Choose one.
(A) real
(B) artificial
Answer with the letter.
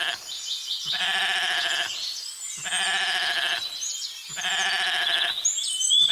A